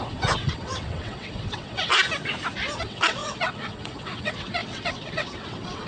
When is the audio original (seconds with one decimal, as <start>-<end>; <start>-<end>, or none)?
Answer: 1.9-2.8